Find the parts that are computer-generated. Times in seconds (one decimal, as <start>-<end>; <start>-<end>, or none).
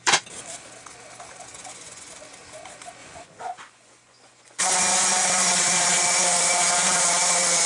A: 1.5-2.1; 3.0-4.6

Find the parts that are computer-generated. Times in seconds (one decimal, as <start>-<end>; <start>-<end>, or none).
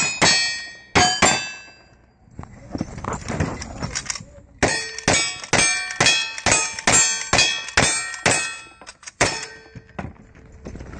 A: 8.9-9.5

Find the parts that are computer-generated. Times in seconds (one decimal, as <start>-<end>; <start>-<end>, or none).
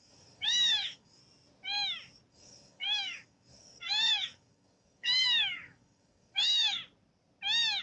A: 0.0-1.2; 2.3-6.8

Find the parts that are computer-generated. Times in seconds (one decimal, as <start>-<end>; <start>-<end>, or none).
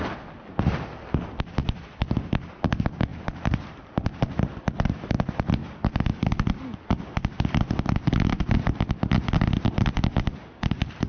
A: 3.1-4.2